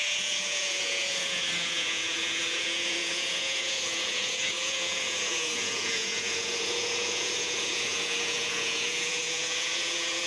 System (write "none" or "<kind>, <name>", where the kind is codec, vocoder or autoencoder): vocoder, Vocos